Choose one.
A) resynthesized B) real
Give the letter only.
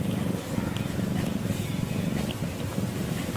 B